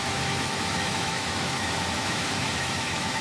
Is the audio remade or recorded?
remade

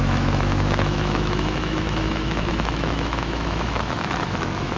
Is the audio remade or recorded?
remade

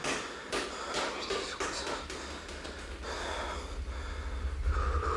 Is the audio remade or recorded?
recorded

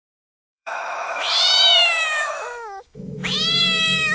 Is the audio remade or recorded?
remade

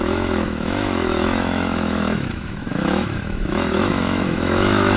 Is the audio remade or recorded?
remade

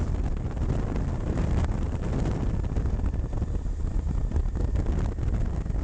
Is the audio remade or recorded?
recorded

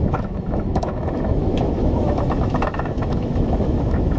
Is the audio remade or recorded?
remade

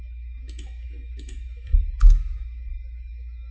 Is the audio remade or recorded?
remade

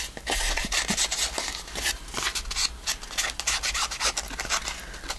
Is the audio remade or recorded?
recorded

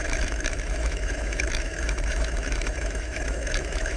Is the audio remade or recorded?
remade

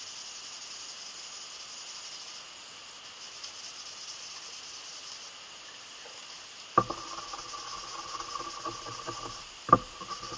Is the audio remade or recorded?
recorded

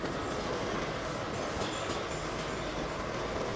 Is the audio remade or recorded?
recorded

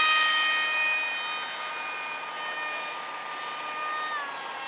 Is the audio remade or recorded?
recorded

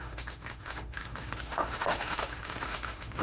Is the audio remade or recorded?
remade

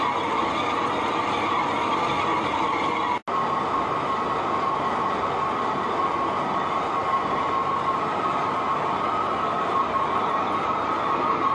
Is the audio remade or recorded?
recorded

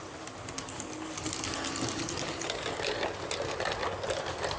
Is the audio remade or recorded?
recorded